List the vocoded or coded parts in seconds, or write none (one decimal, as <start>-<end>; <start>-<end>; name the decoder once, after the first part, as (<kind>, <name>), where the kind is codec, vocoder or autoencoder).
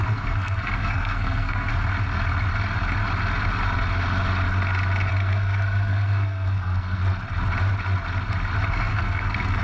0.0-1.7 (codec, SNAC); 5.1-7.0; 8.7-9.6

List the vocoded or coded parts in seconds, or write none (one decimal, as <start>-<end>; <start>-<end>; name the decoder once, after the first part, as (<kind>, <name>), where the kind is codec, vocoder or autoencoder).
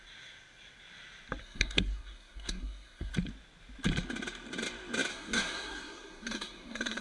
1.4-3.1 (codec, SNAC); 5.1-7.0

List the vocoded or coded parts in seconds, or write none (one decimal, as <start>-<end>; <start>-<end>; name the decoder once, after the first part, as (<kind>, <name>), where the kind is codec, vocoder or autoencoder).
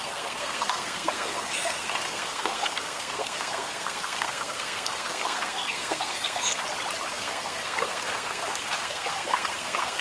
0.0-6.6 (codec, SNAC); 7.1-10.0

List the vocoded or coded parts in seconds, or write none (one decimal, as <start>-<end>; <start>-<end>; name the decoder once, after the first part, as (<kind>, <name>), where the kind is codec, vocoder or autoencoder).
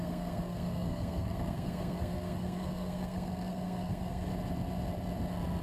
0.0-4.3 (codec, SNAC)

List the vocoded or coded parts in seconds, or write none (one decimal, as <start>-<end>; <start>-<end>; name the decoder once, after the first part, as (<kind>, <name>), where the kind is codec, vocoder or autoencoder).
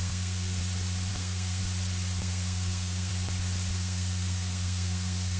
0.0-0.6 (codec, SNAC); 1.1-1.6; 2.2-3.1; 3.7-5.4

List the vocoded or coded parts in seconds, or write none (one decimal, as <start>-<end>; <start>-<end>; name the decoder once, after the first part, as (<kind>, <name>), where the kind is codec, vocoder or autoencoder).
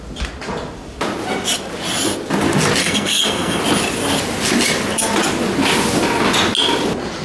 2.8-3.6 (codec, SNAC)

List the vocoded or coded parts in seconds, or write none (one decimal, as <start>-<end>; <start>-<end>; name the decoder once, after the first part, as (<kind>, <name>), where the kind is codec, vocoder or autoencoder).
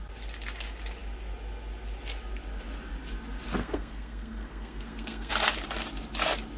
3.6-5.3 (codec, SNAC)